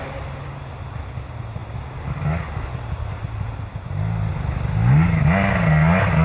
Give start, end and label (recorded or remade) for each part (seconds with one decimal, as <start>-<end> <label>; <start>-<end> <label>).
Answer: 0.0-6.2 recorded